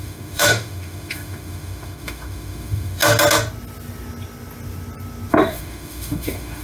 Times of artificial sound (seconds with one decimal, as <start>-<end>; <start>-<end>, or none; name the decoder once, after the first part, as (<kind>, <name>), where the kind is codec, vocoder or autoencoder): 0.0-3.0 (autoencoder, DAC-VAE); 5.3-6.6